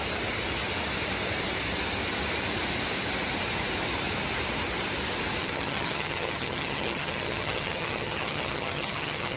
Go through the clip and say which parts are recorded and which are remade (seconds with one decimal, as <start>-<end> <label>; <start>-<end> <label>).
0.0-5.4 recorded; 5.4-9.4 remade